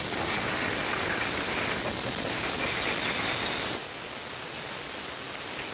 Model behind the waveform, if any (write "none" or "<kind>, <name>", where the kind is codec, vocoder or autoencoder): none